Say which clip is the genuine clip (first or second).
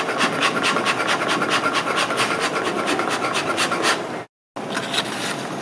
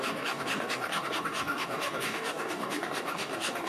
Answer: first